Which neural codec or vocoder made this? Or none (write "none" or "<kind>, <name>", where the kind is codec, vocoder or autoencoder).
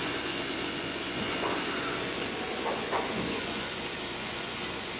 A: vocoder, Vocos